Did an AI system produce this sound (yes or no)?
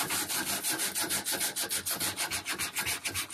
no